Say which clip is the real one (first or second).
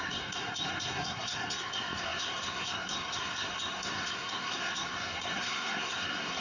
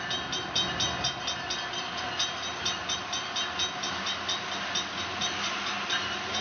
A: second